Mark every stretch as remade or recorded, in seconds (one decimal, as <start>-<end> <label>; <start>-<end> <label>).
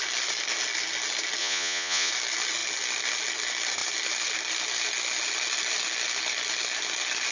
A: 0.0-1.4 recorded; 1.4-2.1 remade; 2.1-7.3 recorded